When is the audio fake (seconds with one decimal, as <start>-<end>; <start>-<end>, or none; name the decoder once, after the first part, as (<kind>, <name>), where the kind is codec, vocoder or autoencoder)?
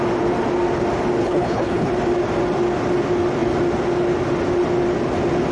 1.2-1.9 (codec, HILCodec)